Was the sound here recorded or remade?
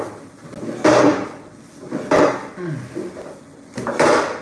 recorded